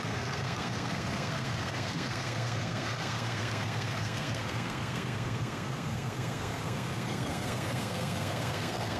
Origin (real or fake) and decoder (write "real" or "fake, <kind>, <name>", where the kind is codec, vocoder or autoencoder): fake, codec, SNAC